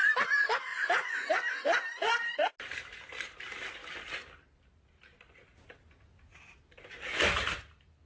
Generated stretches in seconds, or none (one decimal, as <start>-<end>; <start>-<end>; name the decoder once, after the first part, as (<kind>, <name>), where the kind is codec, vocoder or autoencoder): 0.7-1.3 (vocoder, Vocos)